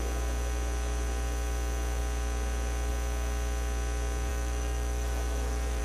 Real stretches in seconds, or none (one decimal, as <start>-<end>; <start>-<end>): 0.0-4.3